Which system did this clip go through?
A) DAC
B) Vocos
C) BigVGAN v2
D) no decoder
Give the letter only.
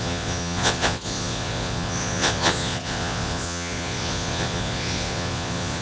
B